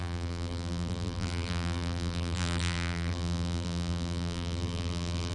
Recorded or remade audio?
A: remade